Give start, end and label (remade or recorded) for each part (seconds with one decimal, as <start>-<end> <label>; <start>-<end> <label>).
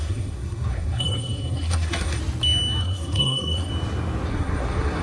0.0-2.2 remade; 2.2-2.8 recorded; 2.8-3.7 remade; 3.7-4.3 recorded; 4.3-5.0 remade